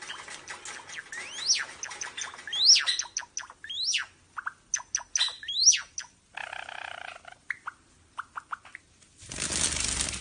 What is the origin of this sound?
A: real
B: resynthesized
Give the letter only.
A